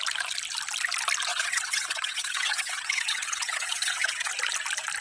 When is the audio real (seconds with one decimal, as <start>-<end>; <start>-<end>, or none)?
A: 0.0-1.3; 4.3-5.0